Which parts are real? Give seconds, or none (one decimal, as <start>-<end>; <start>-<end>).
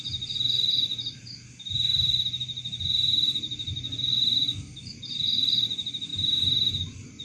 none